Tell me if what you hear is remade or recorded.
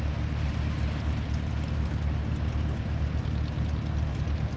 recorded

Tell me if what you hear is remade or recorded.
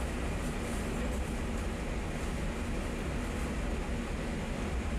recorded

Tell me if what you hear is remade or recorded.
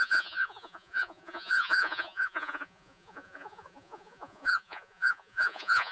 remade